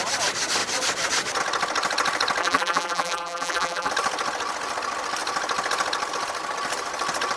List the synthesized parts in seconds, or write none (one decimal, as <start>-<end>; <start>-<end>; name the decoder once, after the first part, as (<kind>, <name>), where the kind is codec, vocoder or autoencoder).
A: 2.4-3.9 (vocoder, BigVGAN v2)